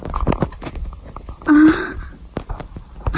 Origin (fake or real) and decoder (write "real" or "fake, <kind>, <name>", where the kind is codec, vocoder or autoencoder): real